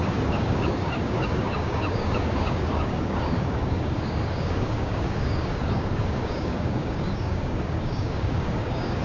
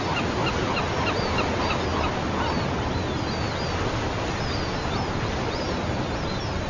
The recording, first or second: second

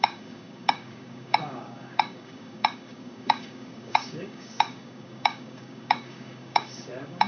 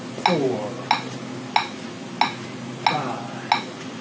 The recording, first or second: second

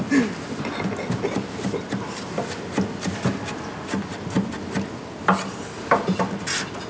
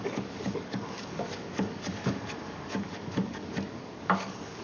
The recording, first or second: first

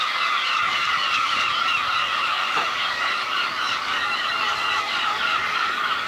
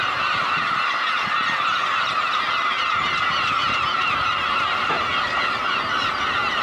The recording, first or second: second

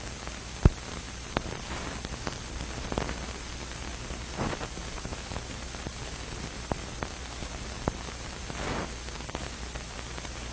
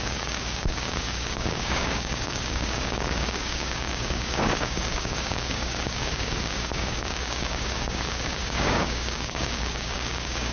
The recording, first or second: first